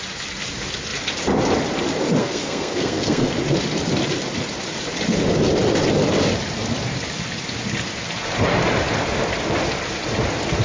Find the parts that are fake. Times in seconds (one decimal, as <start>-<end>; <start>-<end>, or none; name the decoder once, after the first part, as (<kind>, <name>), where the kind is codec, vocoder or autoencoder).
2.2-3.3 (codec, SNAC)